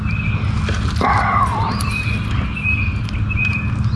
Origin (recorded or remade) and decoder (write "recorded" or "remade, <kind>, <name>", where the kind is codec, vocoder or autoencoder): recorded